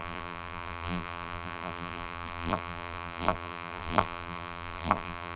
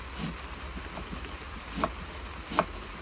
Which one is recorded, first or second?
second